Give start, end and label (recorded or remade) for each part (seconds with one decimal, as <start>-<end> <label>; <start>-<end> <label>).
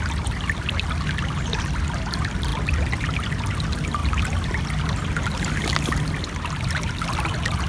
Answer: 0.0-7.7 recorded